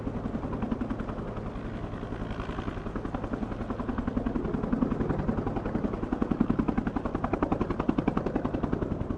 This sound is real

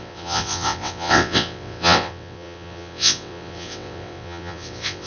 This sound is fake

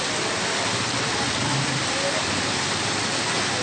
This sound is real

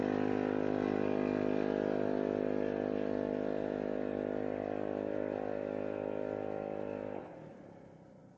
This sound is real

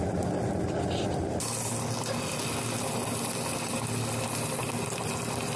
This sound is real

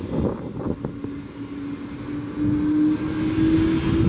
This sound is real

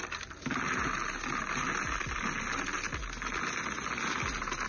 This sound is real